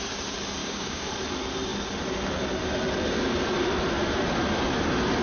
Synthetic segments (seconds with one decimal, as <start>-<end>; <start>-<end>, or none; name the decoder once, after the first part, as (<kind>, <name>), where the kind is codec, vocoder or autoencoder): 0.6-1.1 (codec, DAC)